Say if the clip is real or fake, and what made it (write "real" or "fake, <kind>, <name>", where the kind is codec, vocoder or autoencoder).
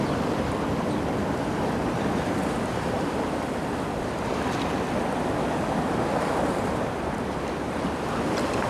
fake, vocoder, BigVGAN v2